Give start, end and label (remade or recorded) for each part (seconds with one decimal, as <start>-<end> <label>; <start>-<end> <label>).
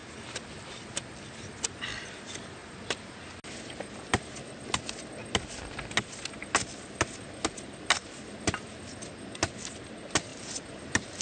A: 0.0-11.2 recorded